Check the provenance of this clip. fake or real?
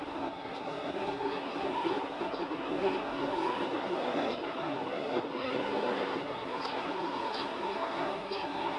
fake